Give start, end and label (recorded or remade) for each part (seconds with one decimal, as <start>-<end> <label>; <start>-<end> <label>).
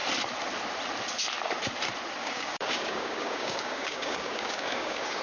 0.0-2.2 recorded; 2.2-5.2 remade